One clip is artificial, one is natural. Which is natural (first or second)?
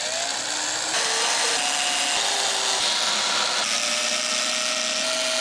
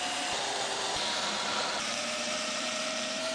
first